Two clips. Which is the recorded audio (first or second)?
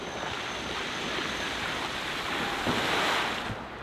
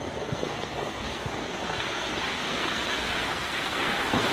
first